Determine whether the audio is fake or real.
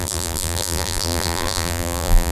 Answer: fake